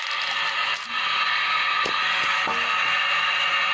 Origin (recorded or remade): recorded